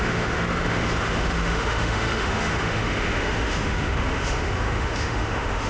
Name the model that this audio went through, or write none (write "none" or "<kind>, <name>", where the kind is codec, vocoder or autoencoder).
autoencoder, DAC-VAE